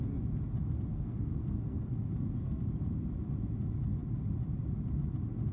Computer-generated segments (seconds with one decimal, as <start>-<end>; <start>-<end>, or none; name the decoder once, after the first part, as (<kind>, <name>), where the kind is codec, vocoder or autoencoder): 0.9-2.6 (codec, SNAC)